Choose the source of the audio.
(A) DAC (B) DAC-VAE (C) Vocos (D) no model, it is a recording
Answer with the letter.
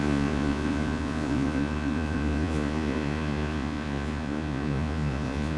C